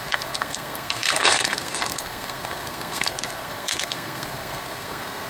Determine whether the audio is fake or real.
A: fake